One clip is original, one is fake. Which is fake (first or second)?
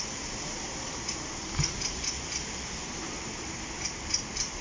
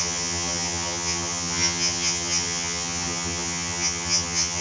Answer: second